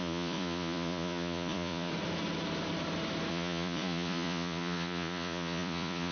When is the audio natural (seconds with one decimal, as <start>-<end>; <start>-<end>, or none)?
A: 1.9-3.3